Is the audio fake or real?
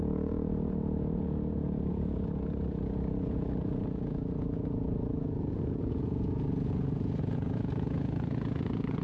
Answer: fake